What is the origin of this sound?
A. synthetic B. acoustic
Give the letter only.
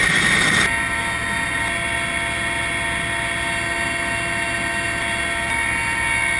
B